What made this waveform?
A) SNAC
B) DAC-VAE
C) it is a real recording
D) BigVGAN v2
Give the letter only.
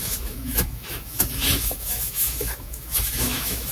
B